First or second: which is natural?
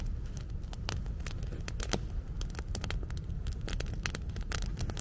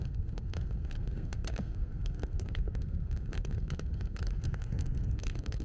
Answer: first